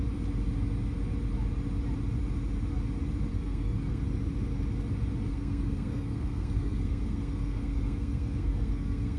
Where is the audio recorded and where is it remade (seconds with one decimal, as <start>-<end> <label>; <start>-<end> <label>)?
0.0-3.3 recorded; 3.3-4.0 remade; 4.0-5.3 recorded; 5.3-9.2 remade